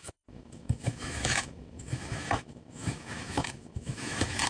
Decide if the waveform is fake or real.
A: fake